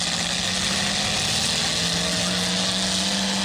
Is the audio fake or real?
real